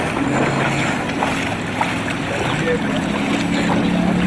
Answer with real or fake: real